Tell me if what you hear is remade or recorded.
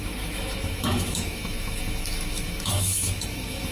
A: remade